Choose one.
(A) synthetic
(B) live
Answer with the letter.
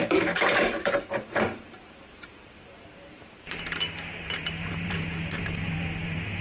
A